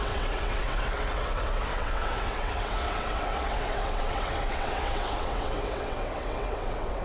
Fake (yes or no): yes